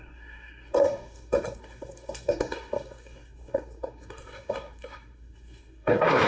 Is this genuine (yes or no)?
no